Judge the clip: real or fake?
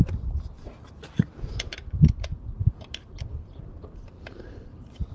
fake